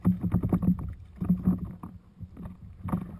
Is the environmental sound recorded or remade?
recorded